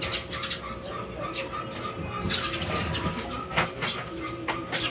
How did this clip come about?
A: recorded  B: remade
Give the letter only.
A